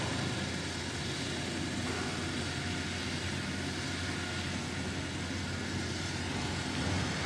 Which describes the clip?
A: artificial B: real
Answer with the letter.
B